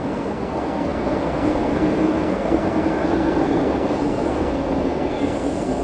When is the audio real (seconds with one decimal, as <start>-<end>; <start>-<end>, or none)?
none